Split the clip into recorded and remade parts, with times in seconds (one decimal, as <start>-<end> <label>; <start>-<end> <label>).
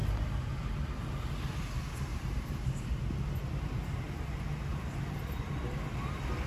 0.0-2.1 recorded; 2.1-3.0 remade; 3.0-4.7 recorded; 4.7-5.4 remade; 5.4-6.5 recorded